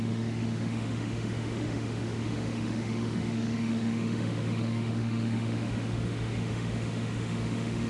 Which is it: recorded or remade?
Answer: remade